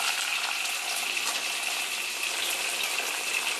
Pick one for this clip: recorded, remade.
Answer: remade